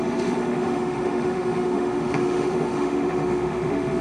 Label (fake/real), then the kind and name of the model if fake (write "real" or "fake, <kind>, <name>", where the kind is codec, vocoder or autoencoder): fake, autoencoder, DAC-VAE